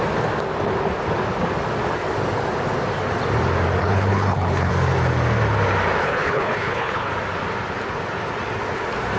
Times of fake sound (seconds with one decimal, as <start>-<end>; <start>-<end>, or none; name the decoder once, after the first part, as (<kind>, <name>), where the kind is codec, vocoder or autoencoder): 3.8-4.7 (codec, HILCodec); 6.0-7.1